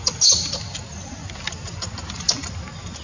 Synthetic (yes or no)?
no